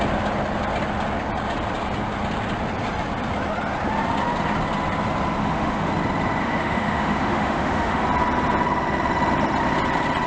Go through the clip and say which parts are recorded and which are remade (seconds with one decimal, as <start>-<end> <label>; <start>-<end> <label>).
0.0-5.4 recorded; 5.4-5.9 remade; 5.9-6.4 recorded; 6.4-8.0 remade; 8.0-10.3 recorded